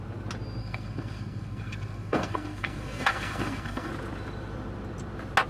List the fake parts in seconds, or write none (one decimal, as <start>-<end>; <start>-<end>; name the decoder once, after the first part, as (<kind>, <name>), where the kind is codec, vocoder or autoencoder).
0.6-3.9 (codec, SNAC)